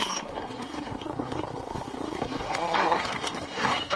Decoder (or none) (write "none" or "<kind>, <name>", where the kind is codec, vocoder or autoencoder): codec, SNAC